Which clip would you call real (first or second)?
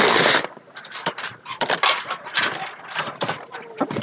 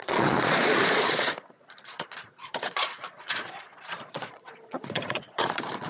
first